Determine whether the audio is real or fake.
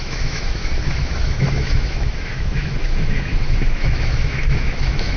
fake